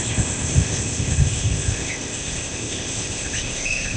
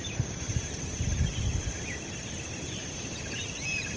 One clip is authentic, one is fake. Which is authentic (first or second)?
second